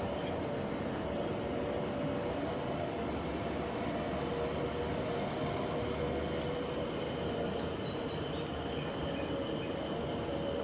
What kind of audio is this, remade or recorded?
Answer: recorded